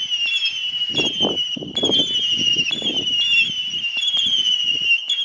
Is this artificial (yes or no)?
no